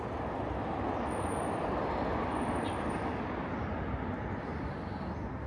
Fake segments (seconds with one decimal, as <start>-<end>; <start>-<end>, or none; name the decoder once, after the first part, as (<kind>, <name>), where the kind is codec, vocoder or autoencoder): none